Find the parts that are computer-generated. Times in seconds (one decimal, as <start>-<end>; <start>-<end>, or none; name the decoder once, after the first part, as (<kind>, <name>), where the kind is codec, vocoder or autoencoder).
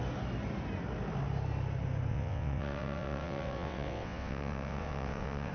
2.1-5.5 (vocoder, WaveNeXt)